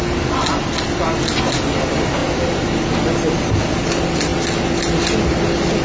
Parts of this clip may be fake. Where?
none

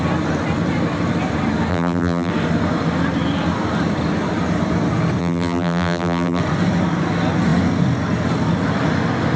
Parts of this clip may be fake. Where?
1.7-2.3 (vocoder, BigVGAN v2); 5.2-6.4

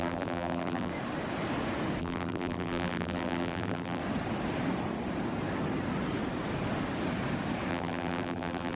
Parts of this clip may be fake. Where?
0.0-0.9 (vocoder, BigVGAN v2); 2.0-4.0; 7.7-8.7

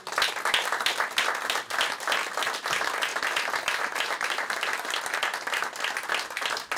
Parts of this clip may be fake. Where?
3.1-5.0 (vocoder, BigVGAN v2)

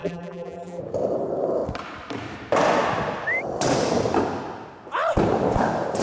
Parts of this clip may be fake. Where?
0.0-0.8 (vocoder, BigVGAN v2)

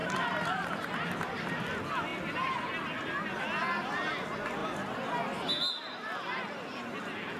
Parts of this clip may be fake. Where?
0.0-1.6 (vocoder, BigVGAN v2)

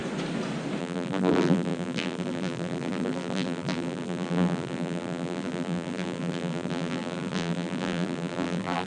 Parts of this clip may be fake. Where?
0.8-8.9 (vocoder, BigVGAN v2)